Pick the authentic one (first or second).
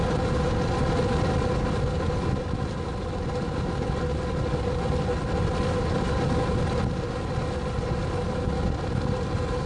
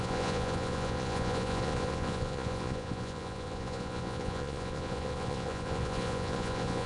first